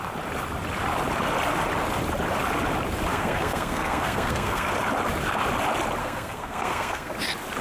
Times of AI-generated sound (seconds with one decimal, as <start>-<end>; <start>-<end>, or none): 3.1-4.7; 6.0-7.1